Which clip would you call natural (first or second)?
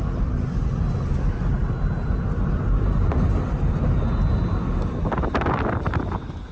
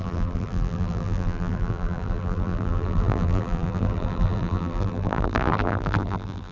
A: first